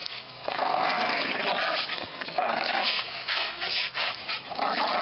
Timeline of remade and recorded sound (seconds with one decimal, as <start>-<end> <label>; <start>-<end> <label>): 0.0-1.3 remade; 1.3-1.9 recorded; 1.9-4.1 remade; 4.1-5.0 recorded